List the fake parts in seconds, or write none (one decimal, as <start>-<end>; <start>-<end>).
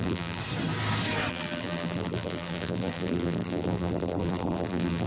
0.0-0.4; 1.3-5.1